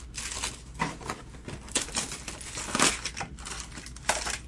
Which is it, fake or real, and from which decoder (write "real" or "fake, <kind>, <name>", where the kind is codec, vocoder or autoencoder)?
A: real